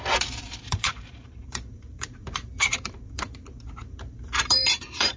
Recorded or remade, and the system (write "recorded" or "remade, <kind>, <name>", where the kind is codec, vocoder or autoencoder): remade, vocoder, BigVGAN v2